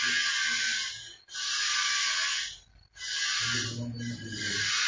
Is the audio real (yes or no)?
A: yes